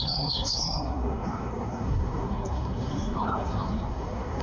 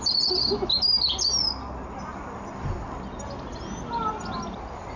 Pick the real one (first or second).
second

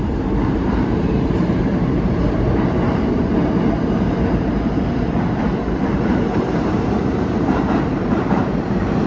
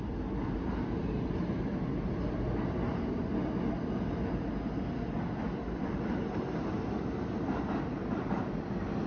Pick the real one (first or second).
second